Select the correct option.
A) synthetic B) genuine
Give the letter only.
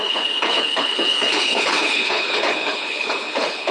A